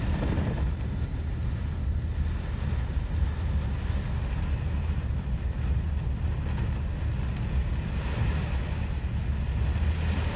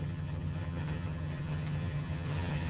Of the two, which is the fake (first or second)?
second